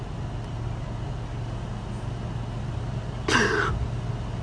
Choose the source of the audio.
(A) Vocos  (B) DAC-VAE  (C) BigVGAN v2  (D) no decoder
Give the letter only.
D